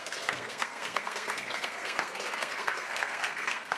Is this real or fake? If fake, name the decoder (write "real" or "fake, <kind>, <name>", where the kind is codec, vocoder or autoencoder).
fake, codec, SNAC